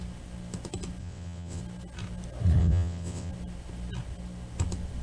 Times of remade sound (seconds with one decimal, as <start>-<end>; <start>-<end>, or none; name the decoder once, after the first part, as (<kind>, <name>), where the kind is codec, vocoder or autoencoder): 1.0-1.6 (vocoder, WaveNeXt); 2.6-3.3